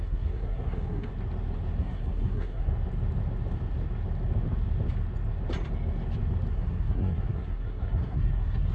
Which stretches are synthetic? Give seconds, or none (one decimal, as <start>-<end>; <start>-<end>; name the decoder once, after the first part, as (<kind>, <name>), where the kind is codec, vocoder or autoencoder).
0.0-1.1 (codec, SNAC); 1.8-2.7; 6.5-8.7